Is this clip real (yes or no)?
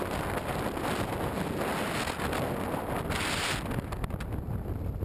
yes